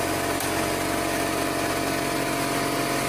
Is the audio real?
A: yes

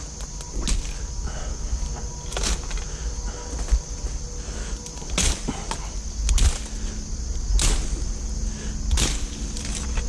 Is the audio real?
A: yes